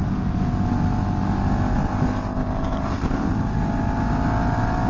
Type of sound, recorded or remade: recorded